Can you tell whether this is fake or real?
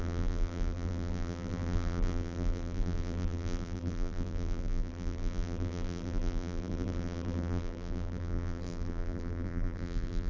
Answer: fake